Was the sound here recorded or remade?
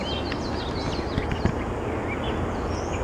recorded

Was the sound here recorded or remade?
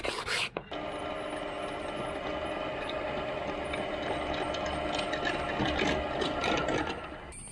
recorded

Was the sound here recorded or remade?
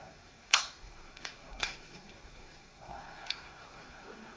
remade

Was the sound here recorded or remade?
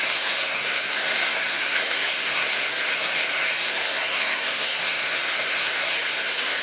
remade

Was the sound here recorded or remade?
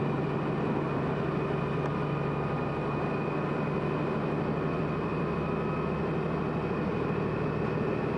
recorded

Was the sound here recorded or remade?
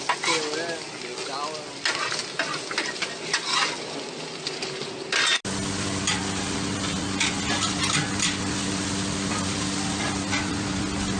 recorded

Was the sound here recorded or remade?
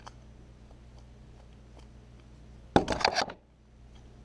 recorded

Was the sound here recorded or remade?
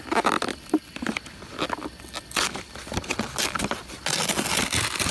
recorded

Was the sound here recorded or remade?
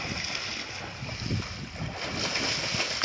recorded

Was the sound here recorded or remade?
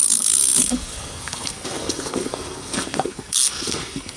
remade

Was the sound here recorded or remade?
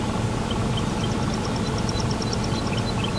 recorded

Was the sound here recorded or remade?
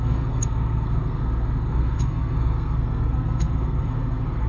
remade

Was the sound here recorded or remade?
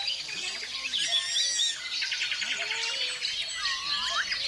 recorded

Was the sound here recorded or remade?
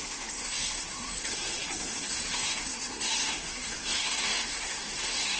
remade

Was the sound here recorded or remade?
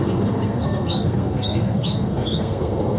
remade